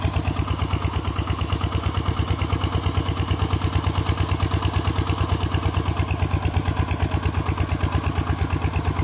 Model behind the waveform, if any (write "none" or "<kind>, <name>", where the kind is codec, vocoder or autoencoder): none